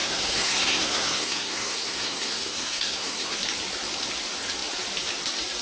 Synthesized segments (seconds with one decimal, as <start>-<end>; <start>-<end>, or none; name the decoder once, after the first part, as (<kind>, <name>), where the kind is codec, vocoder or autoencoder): 0.0-3.4 (codec, SNAC)